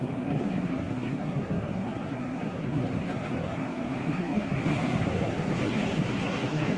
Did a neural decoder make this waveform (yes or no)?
yes